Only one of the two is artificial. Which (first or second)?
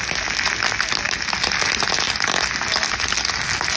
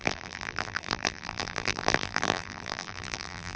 second